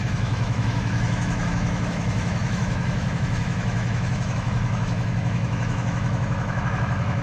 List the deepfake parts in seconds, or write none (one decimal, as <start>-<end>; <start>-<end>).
0.0-7.2